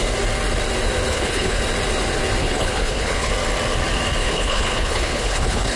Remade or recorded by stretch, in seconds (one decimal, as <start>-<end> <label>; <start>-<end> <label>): 0.0-1.1 recorded; 1.1-1.6 remade; 1.6-2.4 recorded; 2.4-3.3 remade; 3.3-4.2 recorded; 4.2-5.8 remade